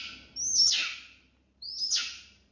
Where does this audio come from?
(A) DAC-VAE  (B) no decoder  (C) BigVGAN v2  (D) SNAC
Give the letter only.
B